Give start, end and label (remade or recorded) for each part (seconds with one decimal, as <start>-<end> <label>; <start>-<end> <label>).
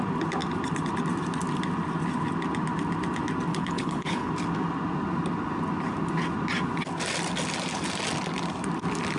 0.0-3.5 recorded; 3.5-4.3 remade; 4.3-9.2 recorded